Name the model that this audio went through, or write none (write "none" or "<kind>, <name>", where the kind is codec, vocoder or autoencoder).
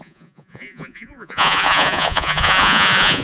vocoder, Vocos